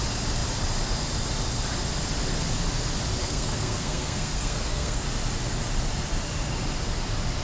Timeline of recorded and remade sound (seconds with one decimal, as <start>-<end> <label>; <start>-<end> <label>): 0.0-3.2 recorded; 3.2-5.0 remade; 5.0-7.4 recorded